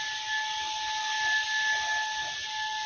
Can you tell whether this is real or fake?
real